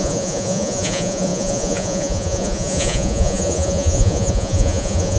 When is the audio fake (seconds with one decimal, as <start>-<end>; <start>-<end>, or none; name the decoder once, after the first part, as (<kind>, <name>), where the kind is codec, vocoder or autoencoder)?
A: 0.0-5.2 (vocoder, Vocos)